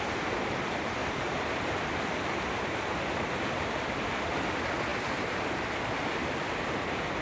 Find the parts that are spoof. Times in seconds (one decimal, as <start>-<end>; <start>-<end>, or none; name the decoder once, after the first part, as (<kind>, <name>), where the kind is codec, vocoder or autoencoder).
1.0-1.9 (vocoder, BigVGAN v2)